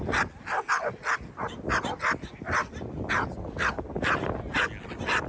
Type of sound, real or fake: real